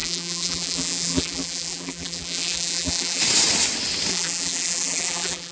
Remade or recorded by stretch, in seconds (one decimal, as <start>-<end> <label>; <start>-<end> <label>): 0.0-3.2 remade; 3.2-4.1 recorded; 4.1-5.5 remade